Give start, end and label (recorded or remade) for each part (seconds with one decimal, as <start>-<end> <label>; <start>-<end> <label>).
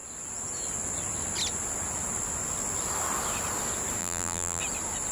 0.0-4.0 recorded; 4.0-4.6 remade; 4.6-5.1 recorded